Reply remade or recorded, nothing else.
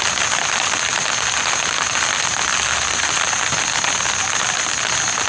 recorded